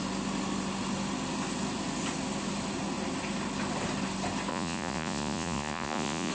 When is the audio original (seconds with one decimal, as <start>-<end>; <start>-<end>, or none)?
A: 0.0-4.5